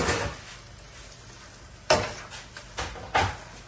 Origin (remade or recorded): recorded